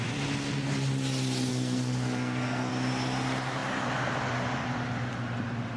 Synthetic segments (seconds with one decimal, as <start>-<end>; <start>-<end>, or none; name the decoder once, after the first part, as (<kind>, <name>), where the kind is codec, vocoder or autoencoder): 1.5-2.7 (codec, SNAC)